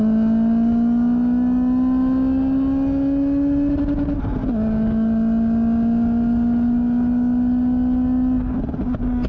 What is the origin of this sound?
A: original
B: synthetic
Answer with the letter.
A